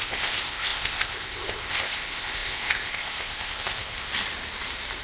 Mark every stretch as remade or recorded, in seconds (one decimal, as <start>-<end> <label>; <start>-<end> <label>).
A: 0.0-4.1 remade; 4.1-5.0 recorded